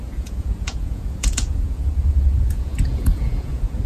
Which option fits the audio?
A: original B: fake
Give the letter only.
B